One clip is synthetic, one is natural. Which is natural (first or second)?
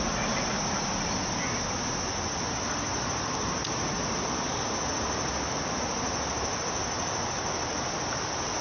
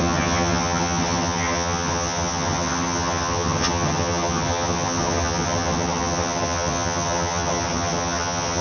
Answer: first